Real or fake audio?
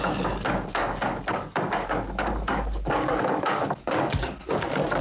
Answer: fake